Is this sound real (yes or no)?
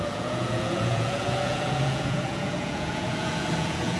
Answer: no